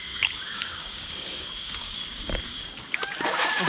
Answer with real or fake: fake